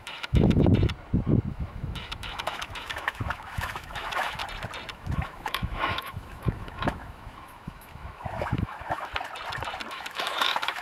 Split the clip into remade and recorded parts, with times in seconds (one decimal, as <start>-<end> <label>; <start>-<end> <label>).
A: 0.0-0.7 remade; 0.7-1.5 recorded; 1.5-4.4 remade; 4.4-4.9 recorded; 4.9-9.1 remade; 9.1-9.9 recorded; 9.9-10.8 remade